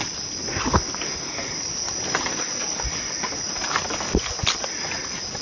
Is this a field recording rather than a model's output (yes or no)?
yes